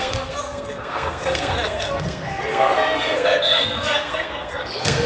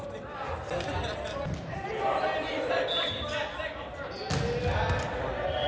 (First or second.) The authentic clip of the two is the second